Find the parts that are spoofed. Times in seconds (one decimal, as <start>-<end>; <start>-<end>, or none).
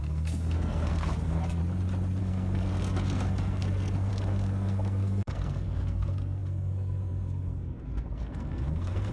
0.0-1.6; 2.2-9.1